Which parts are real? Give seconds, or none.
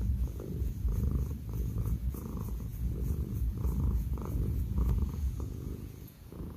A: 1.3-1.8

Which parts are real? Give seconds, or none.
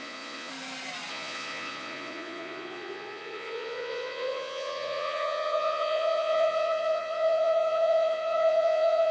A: 0.5-1.1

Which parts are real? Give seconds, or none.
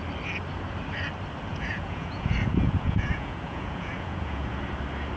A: 0.0-1.5; 4.6-5.2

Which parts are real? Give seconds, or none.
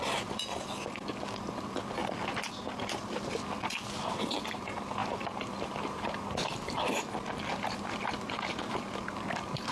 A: 0.0-9.7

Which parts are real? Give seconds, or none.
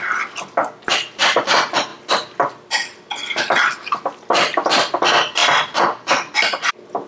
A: 0.0-7.1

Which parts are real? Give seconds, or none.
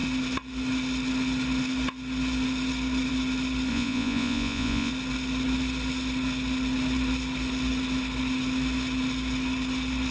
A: 0.0-3.7; 4.9-10.1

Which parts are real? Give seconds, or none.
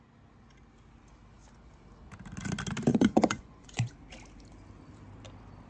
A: 0.0-2.9; 3.9-5.7